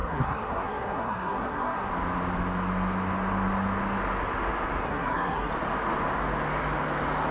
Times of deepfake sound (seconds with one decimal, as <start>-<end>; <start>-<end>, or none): 0.0-1.9; 4.8-5.5

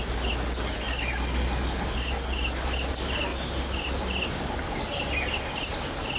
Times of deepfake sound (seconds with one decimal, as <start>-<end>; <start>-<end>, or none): none

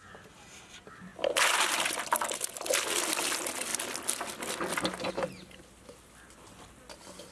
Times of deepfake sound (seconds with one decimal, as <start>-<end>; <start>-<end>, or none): none

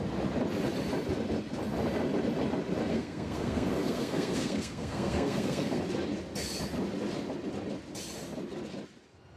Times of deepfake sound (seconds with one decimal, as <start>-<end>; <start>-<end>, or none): 2.9-5.8

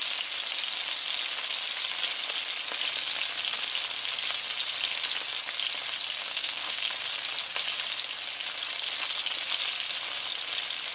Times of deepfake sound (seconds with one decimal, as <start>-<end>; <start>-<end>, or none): 6.2-6.9

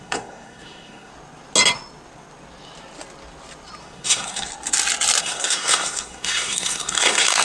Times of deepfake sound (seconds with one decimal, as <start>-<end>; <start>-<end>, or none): 0.0-1.1; 3.8-4.5; 5.2-7.4